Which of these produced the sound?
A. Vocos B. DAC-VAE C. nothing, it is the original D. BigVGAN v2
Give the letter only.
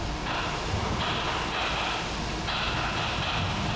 C